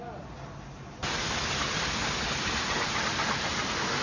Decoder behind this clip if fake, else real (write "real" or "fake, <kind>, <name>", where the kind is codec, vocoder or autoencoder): real